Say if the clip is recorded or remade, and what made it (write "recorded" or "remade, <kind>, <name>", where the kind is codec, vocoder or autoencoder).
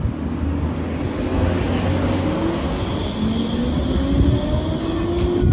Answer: recorded